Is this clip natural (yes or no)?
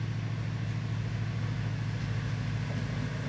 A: yes